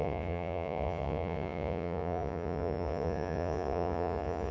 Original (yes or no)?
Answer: no